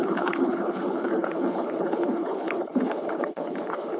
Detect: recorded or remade remade